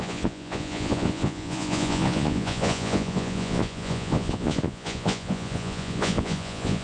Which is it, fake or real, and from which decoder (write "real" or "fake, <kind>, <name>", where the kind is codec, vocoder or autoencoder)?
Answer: fake, vocoder, Vocos